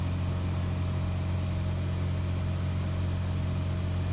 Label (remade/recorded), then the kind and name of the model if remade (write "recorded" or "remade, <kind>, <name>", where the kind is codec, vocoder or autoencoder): recorded